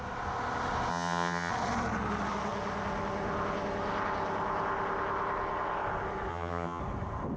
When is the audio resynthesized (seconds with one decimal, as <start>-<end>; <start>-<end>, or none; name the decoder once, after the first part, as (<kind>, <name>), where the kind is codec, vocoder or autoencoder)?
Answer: 0.9-1.5 (vocoder, HiFi-GAN); 6.3-6.8